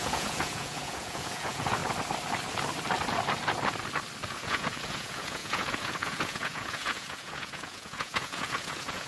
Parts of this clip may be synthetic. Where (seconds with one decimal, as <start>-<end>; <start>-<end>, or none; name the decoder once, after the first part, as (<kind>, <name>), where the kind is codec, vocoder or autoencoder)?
0.0-1.8 (vocoder, Vocos); 4.3-9.1